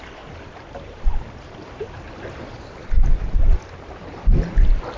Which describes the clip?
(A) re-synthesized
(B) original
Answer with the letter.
B